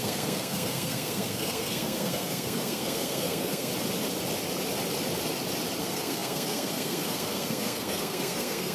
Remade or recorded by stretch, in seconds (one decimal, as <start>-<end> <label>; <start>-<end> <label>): 0.0-3.7 remade; 3.7-5.8 recorded; 5.8-8.7 remade